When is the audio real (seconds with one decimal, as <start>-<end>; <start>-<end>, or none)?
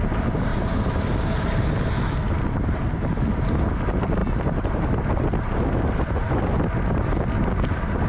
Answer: 0.0-8.1